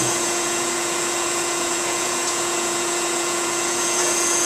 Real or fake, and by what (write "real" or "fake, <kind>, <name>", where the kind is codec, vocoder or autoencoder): fake, vocoder, Vocos